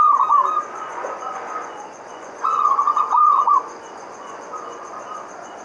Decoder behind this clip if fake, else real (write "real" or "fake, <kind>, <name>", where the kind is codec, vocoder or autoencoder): fake, vocoder, Vocos